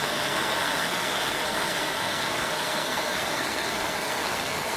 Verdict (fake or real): fake